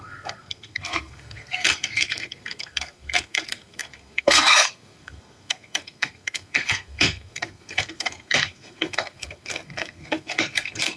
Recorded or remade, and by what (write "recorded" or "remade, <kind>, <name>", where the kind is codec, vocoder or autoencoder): remade, codec, SNAC